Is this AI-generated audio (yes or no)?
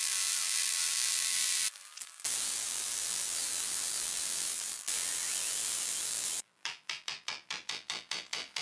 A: yes